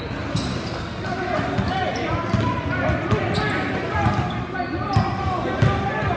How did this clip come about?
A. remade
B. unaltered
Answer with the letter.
B